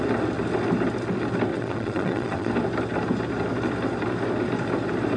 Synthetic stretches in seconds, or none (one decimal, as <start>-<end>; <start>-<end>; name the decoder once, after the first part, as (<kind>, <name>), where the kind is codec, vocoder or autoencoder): 1.5-2.5 (vocoder, Vocos)